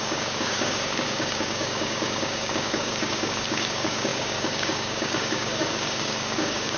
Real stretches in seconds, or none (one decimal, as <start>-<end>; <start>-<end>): none